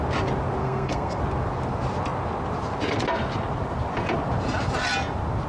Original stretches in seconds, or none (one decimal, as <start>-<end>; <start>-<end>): 0.0-0.6; 1.2-5.5